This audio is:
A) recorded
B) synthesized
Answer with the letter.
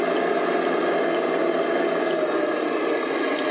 A